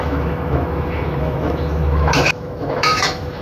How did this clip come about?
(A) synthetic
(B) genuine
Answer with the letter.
A